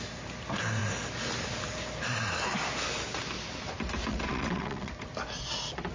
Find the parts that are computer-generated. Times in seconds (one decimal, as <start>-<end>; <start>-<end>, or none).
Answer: 4.1-4.9